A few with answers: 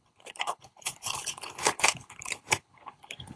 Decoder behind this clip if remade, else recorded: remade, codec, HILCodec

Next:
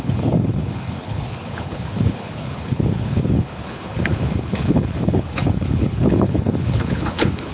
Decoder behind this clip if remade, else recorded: remade, codec, HILCodec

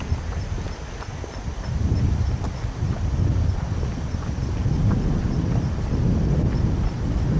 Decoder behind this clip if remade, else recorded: recorded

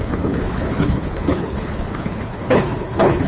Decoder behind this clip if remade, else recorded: remade, codec, HILCodec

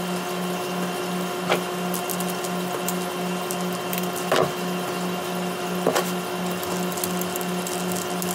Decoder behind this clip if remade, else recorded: recorded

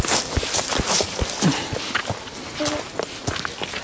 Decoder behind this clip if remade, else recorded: recorded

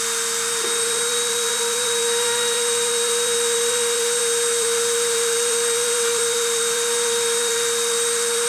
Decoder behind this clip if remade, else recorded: remade, vocoder, BigVGAN v2